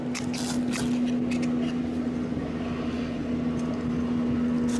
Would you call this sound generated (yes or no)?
no